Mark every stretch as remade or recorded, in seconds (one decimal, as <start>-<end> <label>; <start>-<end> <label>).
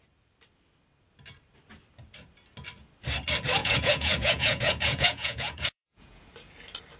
0.0-3.6 recorded; 3.6-6.2 remade; 6.2-7.0 recorded